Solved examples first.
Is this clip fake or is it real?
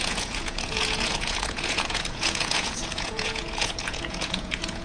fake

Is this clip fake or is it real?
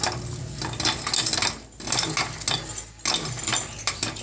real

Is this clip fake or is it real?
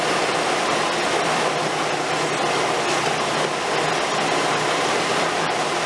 real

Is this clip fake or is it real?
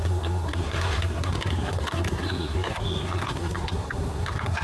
fake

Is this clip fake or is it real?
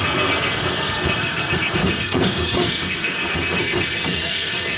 fake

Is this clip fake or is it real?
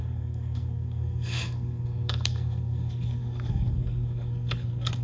fake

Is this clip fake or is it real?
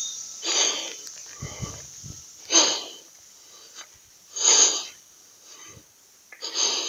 real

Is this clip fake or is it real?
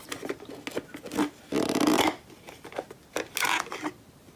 real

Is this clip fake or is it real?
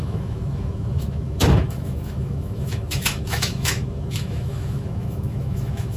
fake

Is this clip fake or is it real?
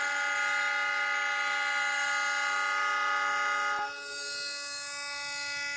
real